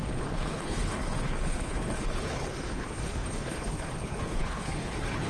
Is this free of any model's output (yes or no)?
no